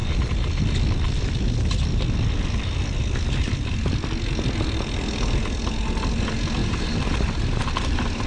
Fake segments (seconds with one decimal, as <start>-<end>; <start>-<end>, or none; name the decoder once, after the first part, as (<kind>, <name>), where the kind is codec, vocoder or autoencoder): 0.0-0.6 (vocoder, BigVGAN v2); 6.6-8.3